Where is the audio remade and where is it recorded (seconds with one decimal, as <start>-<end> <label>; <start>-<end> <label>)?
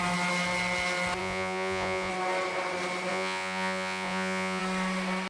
0.0-1.2 recorded; 1.2-2.1 remade; 2.1-3.1 recorded; 3.1-4.6 remade; 4.6-5.3 recorded